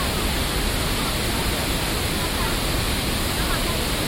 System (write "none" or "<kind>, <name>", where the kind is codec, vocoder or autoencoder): none